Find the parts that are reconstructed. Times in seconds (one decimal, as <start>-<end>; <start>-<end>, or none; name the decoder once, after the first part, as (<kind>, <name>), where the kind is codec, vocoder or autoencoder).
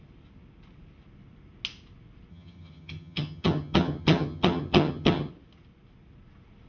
2.3-5.3 (vocoder, HiFi-GAN)